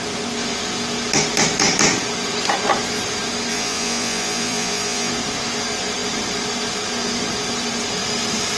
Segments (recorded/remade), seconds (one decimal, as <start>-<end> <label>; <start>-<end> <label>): 0.0-3.5 recorded; 3.5-5.1 remade; 5.1-8.6 recorded